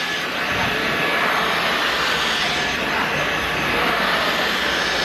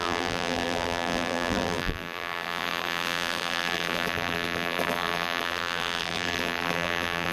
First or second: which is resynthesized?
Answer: second